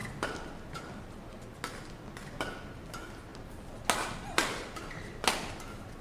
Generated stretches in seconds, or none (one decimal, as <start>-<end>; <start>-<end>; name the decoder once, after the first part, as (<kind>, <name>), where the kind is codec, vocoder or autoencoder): none